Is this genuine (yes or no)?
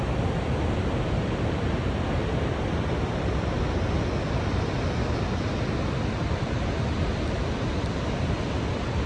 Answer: yes